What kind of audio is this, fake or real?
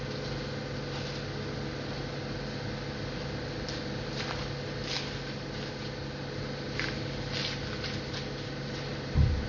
real